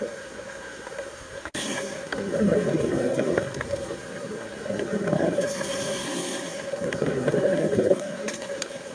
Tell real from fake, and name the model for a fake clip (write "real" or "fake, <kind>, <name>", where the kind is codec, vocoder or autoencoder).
fake, codec, SNAC